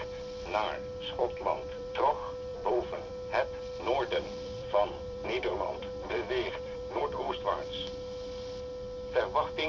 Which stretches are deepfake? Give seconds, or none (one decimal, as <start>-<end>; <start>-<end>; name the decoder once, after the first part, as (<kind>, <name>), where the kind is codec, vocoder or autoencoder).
1.2-2.1 (vocoder, BigVGAN v2); 2.5-3.1; 3.9-7.0

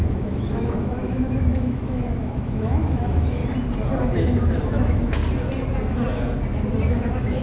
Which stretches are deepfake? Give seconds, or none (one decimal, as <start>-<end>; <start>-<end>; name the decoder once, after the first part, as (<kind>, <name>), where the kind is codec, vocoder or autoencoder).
0.0-3.4 (autoencoder, DAC-VAE); 4.2-5.2; 6.9-7.4

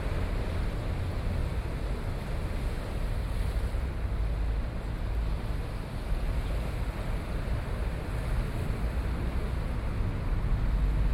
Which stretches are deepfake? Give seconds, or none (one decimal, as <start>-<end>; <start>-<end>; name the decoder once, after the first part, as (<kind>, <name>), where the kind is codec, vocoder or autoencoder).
1.4-2.6 (vocoder, BigVGAN v2)

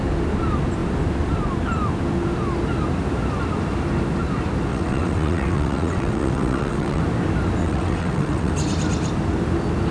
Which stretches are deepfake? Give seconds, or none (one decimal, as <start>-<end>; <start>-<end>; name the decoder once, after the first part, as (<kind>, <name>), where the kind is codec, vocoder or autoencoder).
4.7-7.0 (vocoder, WaveNeXt); 7.6-8.5

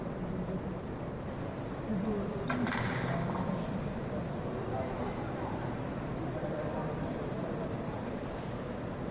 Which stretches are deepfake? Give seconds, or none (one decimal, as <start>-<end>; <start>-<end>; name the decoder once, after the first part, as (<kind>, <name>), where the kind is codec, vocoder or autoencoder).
6.1-8.7 (vocoder, BigVGAN v2)

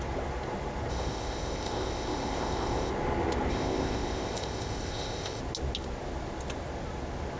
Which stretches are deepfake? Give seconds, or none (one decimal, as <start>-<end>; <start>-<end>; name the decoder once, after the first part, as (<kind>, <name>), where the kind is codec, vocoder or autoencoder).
0.9-2.9 (codec, ZipCodec); 3.5-5.4

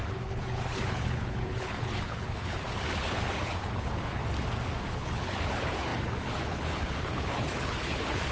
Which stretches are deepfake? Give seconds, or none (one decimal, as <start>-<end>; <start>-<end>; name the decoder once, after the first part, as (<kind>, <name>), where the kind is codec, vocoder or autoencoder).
0.0-4.2 (codec, HILCodec); 4.9-8.3